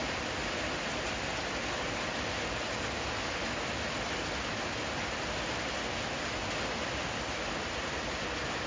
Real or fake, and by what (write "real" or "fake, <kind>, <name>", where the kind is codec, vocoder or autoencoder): real